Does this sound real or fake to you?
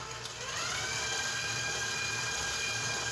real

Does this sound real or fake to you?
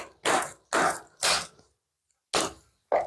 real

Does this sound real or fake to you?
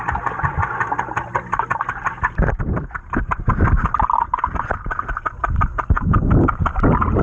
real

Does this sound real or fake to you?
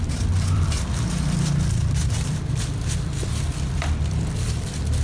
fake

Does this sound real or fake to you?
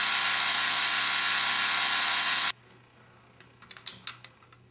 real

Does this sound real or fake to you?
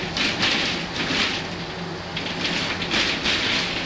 real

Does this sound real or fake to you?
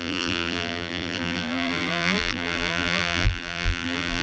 fake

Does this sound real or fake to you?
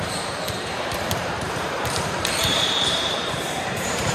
fake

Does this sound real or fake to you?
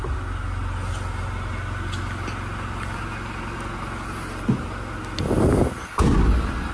real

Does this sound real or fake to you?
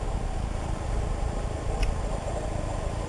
fake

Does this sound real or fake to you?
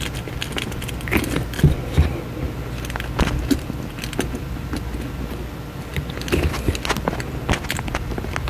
real